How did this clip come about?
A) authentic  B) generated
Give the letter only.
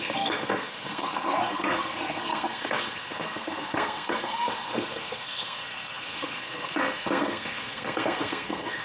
B